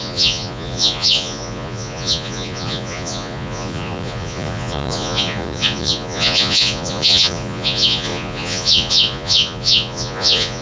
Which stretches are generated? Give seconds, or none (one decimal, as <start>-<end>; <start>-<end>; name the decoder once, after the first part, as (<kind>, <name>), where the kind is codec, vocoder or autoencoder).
0.0-10.6 (vocoder, Vocos)